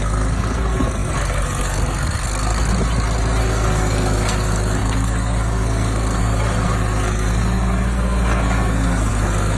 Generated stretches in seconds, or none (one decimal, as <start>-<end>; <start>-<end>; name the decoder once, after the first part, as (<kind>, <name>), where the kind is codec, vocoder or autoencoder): 0.0-2.7 (codec, SNAC); 3.4-9.6